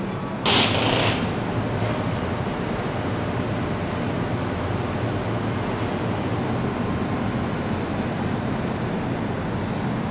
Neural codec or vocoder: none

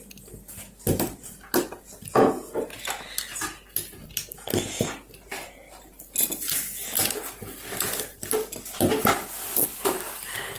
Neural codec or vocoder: none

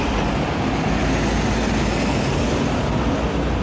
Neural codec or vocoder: none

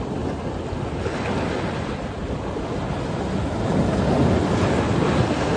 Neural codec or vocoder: none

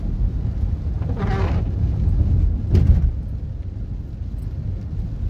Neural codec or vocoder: none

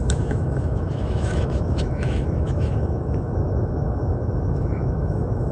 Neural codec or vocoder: autoencoder, DAC-VAE